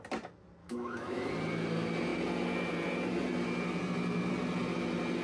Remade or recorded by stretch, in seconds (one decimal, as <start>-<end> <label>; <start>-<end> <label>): 0.0-0.6 recorded; 0.6-1.3 remade; 1.3-5.2 recorded